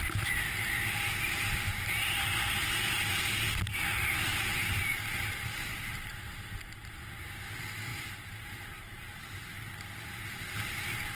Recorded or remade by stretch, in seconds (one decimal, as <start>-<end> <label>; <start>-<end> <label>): 0.0-4.3 recorded; 4.3-6.0 remade; 6.0-7.9 recorded; 7.9-9.7 remade; 9.7-11.2 recorded